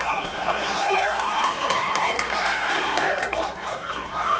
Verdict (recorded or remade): remade